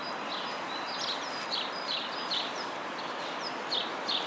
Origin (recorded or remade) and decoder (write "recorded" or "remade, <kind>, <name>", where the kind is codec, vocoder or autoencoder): recorded